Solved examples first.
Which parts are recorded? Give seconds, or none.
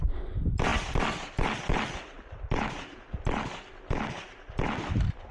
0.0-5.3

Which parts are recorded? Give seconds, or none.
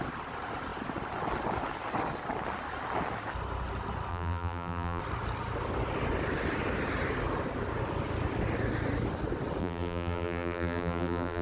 0.0-4.1; 5.0-9.6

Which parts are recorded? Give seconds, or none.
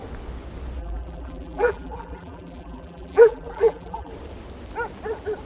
0.0-0.8; 4.1-5.5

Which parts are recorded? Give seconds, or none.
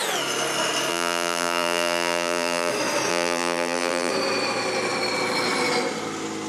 0.0-0.9; 2.7-3.1; 4.1-6.5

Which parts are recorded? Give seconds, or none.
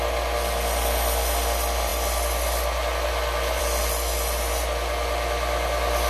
0.0-6.1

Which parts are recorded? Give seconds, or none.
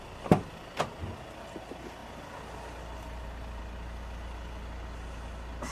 0.0-5.7